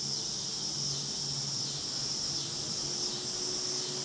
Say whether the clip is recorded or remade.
recorded